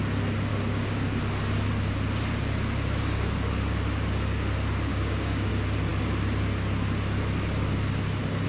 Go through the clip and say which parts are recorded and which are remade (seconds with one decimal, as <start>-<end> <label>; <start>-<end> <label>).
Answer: 0.0-0.5 recorded; 0.5-1.2 remade; 1.2-4.9 recorded; 4.9-5.5 remade; 5.5-8.5 recorded